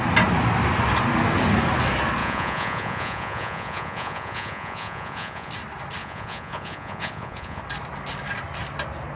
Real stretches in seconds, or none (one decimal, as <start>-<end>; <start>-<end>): 0.0-2.2; 5.5-6.0; 7.6-9.2